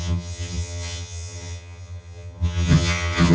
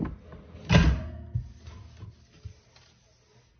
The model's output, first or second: first